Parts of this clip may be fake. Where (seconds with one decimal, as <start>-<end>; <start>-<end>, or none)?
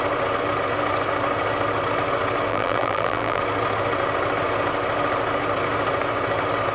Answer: 2.5-3.4